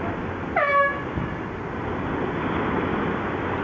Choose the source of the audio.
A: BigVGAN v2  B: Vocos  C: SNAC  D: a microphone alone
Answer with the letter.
D